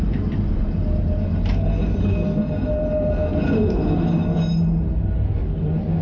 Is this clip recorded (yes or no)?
yes